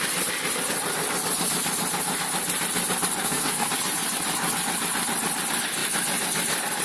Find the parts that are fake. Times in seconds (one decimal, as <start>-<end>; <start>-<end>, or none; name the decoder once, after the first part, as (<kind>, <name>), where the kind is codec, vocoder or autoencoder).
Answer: 3.2-3.7 (codec, SNAC)